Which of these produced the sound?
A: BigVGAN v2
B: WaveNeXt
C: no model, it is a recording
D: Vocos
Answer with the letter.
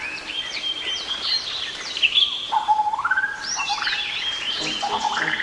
A